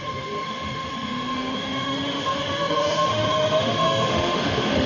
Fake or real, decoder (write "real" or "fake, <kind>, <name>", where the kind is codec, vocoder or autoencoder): fake, autoencoder, DAC-VAE